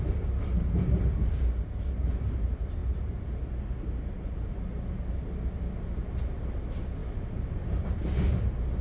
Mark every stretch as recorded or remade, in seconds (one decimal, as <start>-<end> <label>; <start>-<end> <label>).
0.0-8.8 recorded